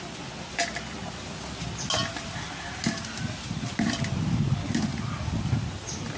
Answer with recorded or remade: recorded